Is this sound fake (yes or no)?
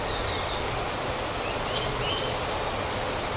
no